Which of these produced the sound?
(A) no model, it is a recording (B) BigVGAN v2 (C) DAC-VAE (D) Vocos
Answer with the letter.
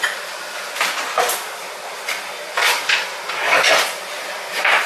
A